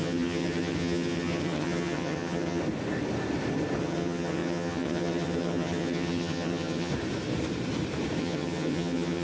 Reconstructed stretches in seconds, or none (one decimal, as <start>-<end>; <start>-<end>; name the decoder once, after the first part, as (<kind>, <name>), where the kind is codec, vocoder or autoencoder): 0.0-2.6 (vocoder, HiFi-GAN); 3.8-6.9; 8.2-9.2

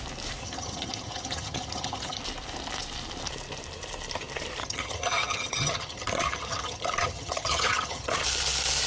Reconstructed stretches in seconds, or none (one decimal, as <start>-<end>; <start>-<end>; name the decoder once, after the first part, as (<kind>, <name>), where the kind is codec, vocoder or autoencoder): 0.4-2.2 (vocoder, HiFi-GAN); 4.6-8.1